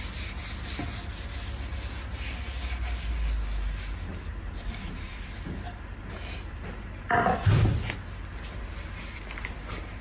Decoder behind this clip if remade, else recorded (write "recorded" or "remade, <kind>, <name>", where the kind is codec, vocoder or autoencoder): recorded